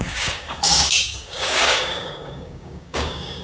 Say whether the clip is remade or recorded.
remade